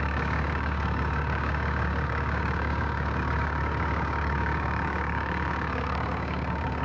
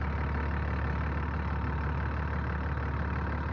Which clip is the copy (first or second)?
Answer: first